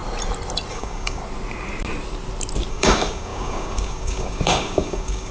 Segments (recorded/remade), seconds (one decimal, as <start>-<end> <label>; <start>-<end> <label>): 0.0-0.7 recorded; 0.7-1.2 remade; 1.2-2.7 recorded; 2.7-5.3 remade